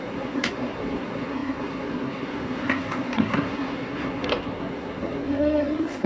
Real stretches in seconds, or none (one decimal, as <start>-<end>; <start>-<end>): none